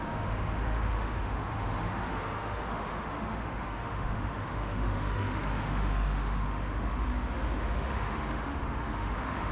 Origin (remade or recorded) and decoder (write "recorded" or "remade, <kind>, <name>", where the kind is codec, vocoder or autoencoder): remade, autoencoder, DAC-VAE